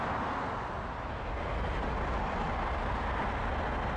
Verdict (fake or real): real